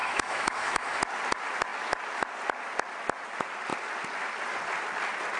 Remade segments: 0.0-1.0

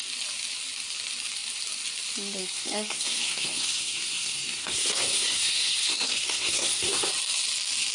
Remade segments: 2.4-7.1

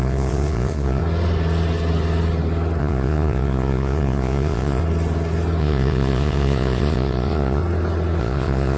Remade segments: 0.0-1.0; 2.8-4.8; 5.6-7.6; 8.2-8.8

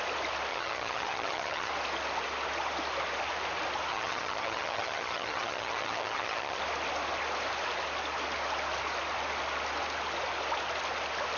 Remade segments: 0.5-1.7; 3.9-6.6

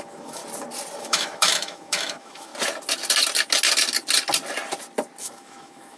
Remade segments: 0.0-0.4; 1.0-2.5; 5.2-6.0

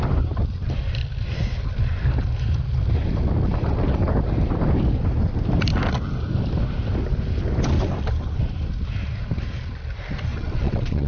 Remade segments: 10.3-11.1

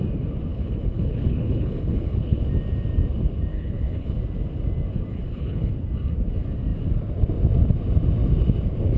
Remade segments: 0.5-2.4; 3.5-4.2; 5.1-5.7

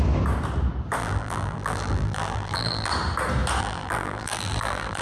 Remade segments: 1.0-2.9; 3.6-5.0